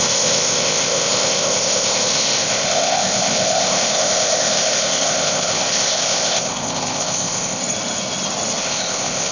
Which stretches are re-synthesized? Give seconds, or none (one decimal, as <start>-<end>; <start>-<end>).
0.0-7.6; 8.6-9.3